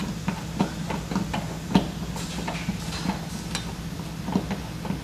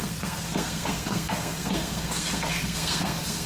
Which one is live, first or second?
first